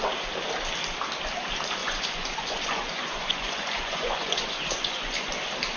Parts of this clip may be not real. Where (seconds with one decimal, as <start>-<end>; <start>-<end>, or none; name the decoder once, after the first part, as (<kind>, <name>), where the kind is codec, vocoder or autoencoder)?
1.8-5.3 (vocoder, Vocos)